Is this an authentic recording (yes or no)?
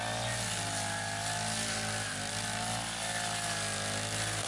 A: yes